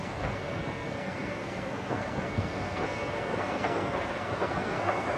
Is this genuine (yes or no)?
no